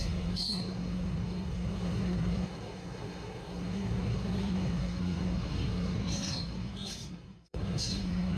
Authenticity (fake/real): fake